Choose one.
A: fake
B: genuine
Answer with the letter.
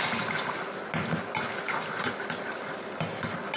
B